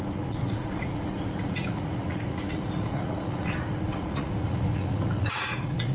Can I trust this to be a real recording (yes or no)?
no